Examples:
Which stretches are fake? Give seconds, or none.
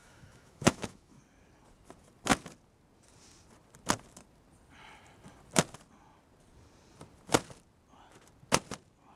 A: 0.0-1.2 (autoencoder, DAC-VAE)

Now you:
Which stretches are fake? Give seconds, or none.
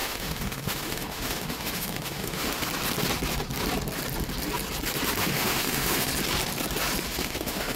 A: 0.0-2.6 (autoencoder, DAC-VAE); 5.2-6.1; 7.1-7.8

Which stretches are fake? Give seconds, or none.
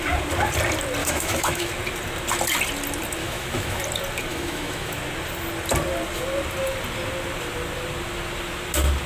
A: 1.0-1.7 (autoencoder, DAC-VAE); 3.2-3.8; 4.3-5.0